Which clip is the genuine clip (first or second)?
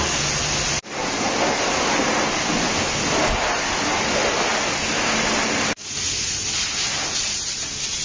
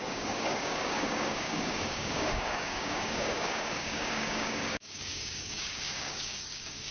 first